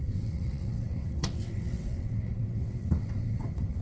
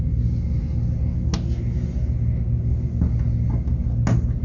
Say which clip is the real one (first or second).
second